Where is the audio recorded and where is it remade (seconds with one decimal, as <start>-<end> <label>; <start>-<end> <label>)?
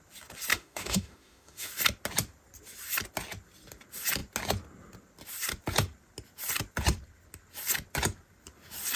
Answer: 0.0-0.5 recorded; 0.5-1.7 remade; 1.7-9.0 recorded